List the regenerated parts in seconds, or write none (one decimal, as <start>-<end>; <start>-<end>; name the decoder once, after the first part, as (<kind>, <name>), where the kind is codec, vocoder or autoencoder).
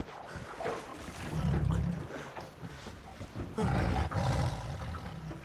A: none